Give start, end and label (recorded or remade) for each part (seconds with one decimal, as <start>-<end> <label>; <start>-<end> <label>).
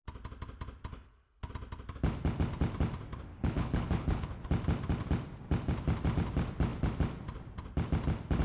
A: 0.0-0.9 recorded; 0.9-1.5 remade; 1.5-3.3 recorded; 3.3-4.5 remade; 4.5-8.4 recorded